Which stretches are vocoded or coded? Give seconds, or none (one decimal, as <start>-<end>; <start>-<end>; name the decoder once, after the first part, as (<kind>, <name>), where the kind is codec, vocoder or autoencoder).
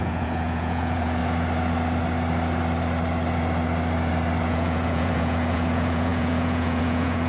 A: 0.0-1.2 (vocoder, Vocos); 4.4-7.3